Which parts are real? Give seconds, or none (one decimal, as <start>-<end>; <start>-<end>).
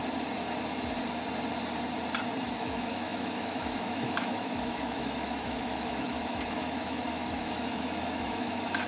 0.0-2.6